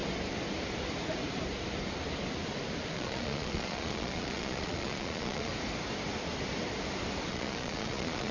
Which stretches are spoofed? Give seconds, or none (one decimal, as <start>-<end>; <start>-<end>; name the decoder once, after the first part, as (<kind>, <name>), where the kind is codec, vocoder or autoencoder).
2.9-5.5 (vocoder, Vocos); 7.3-8.3